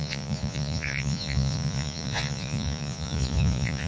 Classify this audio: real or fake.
fake